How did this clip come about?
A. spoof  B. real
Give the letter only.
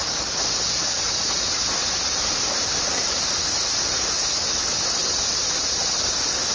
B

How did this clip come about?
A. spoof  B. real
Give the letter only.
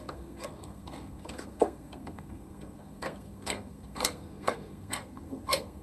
A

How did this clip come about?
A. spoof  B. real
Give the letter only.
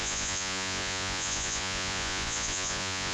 A